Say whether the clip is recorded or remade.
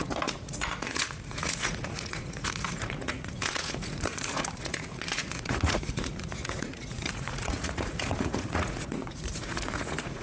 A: remade